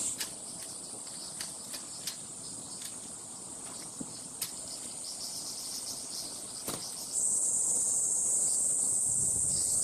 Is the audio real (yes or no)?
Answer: yes